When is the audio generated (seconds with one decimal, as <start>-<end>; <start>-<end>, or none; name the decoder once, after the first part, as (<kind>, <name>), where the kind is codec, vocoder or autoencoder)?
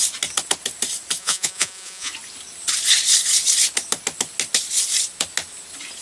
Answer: 1.2-2.1 (vocoder, Vocos)